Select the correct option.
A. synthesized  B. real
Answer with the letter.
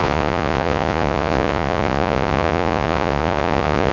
A